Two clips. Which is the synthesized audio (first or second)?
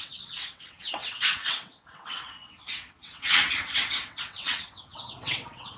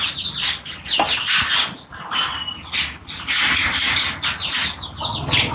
first